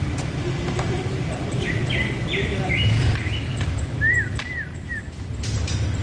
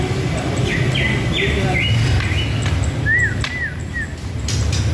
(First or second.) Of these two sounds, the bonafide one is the second